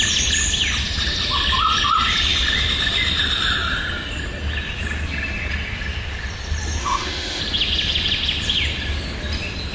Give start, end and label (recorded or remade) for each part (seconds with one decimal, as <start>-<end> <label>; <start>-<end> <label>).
0.0-6.8 recorded; 6.8-7.4 remade; 7.4-9.7 recorded

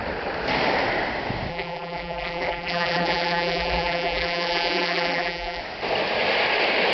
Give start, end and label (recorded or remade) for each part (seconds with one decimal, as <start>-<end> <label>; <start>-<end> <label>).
0.0-1.5 recorded; 1.5-5.6 remade; 5.6-6.9 recorded

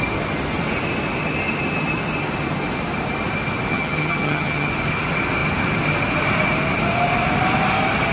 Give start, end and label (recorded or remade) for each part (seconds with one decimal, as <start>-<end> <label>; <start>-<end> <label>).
0.0-3.7 recorded; 3.7-4.7 remade; 4.7-8.1 recorded